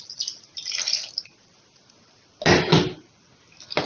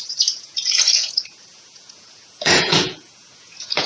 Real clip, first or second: first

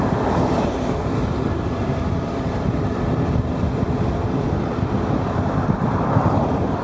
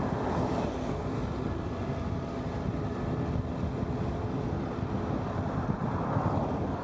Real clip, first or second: second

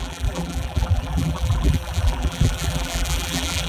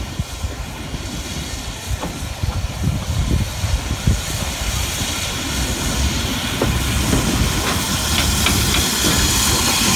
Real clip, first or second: second